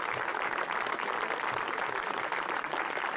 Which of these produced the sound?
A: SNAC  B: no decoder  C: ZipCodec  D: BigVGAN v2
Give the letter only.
B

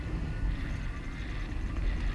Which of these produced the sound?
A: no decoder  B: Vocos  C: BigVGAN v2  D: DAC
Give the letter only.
A